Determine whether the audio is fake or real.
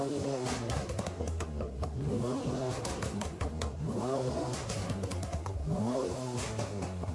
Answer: fake